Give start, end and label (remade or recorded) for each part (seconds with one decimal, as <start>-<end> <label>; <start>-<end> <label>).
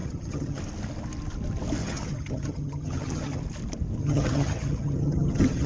0.0-0.6 remade; 0.6-1.8 recorded; 1.8-3.4 remade; 3.4-4.0 recorded; 4.0-5.7 remade